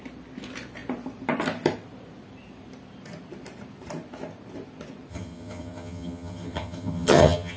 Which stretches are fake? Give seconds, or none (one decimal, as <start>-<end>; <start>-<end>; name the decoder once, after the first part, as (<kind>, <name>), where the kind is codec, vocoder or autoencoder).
5.1-7.6 (vocoder, HiFi-GAN)